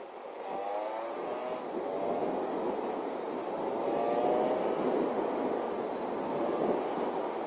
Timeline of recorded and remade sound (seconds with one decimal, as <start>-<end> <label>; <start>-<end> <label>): 0.0-7.5 recorded

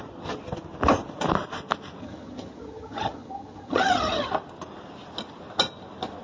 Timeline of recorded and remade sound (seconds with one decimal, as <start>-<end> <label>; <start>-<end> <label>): 0.0-2.0 recorded; 2.0-4.3 remade; 4.3-6.2 recorded